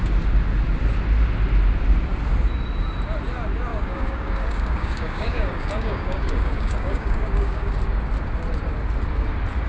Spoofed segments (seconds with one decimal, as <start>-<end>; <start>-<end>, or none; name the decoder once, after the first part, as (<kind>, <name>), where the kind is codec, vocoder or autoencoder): 3.7-7.7 (codec, DAC)